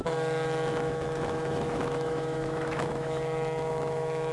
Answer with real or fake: fake